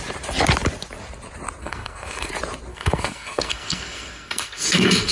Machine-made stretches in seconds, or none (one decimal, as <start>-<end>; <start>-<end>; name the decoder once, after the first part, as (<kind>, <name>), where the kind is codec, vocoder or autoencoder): 1.6-2.3 (codec, SNAC); 2.7-5.1

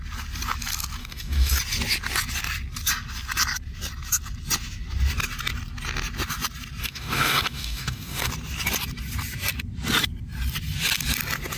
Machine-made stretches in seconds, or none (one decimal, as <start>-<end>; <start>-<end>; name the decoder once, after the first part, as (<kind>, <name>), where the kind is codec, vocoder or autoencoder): 1.0-1.6 (codec, DAC); 6.8-8.3

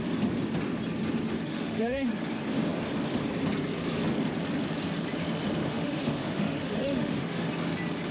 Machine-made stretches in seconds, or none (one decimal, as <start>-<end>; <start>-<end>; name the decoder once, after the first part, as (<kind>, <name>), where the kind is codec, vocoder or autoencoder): 1.3-2.1 (autoencoder, DAC-VAE); 5.6-7.5

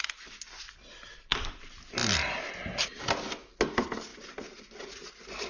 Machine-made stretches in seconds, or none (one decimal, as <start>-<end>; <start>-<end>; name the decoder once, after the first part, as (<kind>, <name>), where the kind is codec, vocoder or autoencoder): none

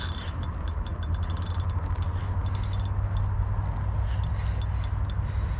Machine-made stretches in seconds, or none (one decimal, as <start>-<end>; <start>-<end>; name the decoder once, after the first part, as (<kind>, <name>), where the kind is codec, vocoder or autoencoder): none

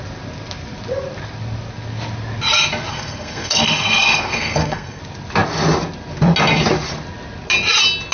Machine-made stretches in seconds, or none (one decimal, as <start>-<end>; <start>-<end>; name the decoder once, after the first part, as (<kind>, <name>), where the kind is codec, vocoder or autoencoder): 2.9-5.0 (codec, SNAC)